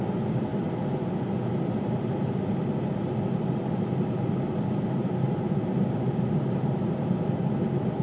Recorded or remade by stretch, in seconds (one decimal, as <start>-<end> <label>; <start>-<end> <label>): 0.0-8.0 recorded

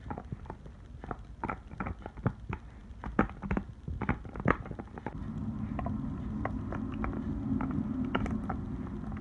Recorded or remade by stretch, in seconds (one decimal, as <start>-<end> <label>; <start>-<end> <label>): 0.0-9.2 recorded

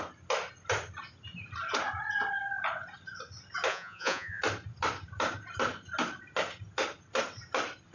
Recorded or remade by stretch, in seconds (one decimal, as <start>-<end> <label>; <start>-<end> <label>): 0.0-3.7 recorded; 3.7-4.4 remade; 4.4-7.9 recorded

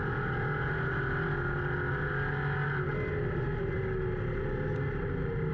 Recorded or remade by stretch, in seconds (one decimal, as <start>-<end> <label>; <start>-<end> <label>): 0.0-5.5 recorded

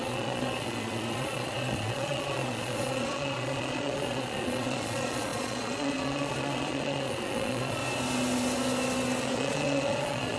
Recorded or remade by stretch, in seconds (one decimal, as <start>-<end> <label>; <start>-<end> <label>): 0.0-7.8 remade; 7.8-9.2 recorded; 9.2-10.4 remade

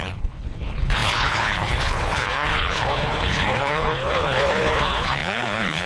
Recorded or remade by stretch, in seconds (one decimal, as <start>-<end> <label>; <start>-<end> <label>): 0.0-5.9 remade

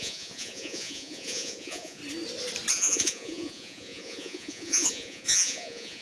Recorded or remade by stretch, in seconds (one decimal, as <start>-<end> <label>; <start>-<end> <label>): 0.0-2.0 remade; 2.0-2.7 recorded; 2.7-6.0 remade

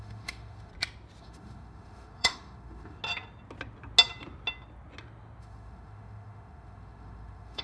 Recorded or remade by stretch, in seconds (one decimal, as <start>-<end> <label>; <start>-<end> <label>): 0.0-0.7 remade; 0.7-1.2 recorded; 1.2-3.0 remade; 3.0-5.4 recorded; 5.4-7.6 remade